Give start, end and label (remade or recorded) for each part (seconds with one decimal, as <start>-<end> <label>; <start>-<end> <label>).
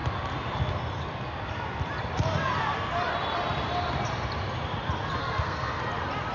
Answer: 0.0-5.2 recorded; 5.2-5.8 remade; 5.8-6.3 recorded